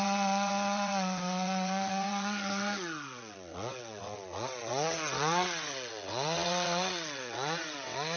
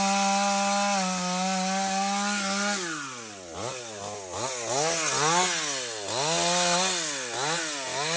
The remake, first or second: first